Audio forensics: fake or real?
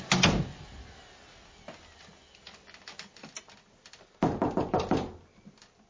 real